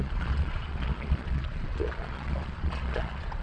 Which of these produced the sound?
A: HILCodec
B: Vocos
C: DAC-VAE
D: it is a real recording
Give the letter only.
B